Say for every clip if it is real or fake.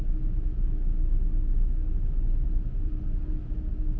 real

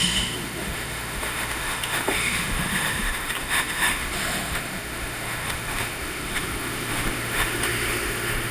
fake